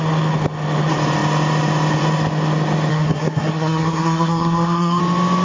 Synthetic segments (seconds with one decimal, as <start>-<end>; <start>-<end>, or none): 2.9-5.0